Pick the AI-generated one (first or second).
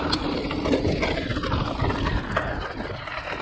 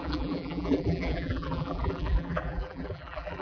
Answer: second